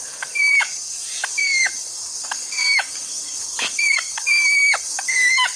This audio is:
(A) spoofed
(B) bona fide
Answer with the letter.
A